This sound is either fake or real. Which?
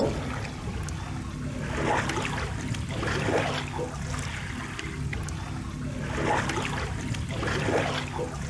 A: real